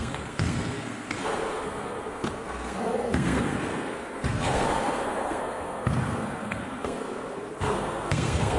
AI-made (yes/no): yes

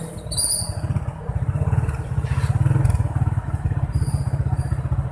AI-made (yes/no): no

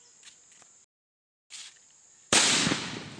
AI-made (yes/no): no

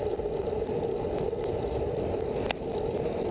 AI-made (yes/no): no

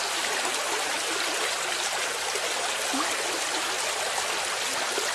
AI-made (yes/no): no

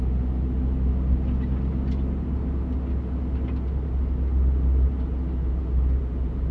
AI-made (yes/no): no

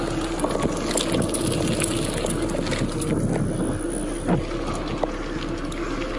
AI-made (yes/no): no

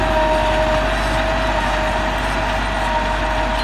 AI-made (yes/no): no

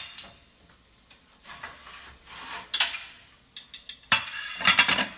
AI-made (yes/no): no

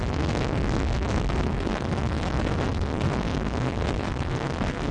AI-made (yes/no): yes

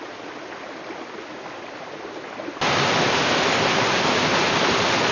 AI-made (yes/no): no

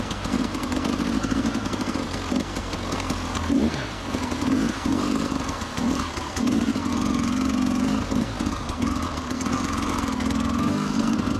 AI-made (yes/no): yes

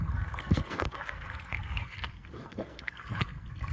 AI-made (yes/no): yes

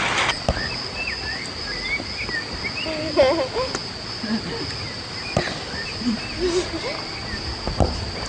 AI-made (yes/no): no